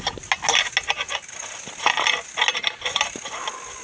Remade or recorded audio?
recorded